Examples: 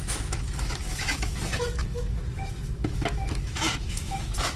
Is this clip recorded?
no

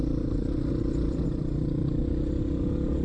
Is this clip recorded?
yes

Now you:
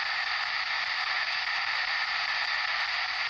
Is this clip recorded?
yes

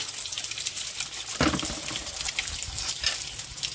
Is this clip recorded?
yes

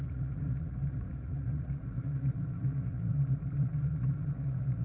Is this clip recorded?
no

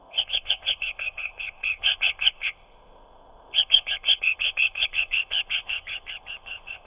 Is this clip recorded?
no